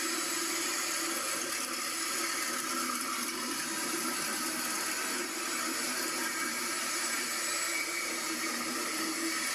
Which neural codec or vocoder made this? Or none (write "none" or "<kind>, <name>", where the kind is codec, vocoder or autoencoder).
vocoder, BigVGAN v2